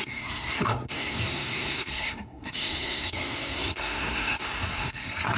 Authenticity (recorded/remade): remade